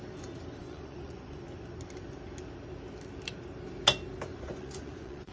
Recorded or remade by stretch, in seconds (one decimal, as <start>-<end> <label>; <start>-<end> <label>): 0.0-0.6 recorded; 0.6-1.4 remade; 1.4-4.3 recorded; 4.3-5.3 remade